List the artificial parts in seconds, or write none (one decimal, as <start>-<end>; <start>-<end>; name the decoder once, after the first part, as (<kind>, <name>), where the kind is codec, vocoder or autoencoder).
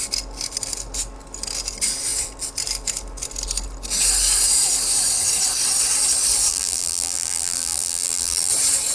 6.5-8.5 (vocoder, BigVGAN v2)